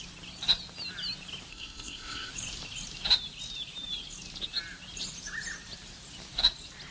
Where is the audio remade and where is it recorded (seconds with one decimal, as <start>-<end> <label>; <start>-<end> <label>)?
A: 0.0-1.5 recorded; 1.5-2.3 remade; 2.3-6.9 recorded